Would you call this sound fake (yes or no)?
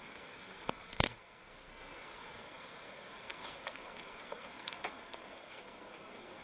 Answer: yes